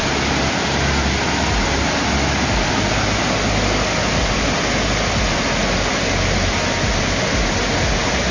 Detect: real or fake real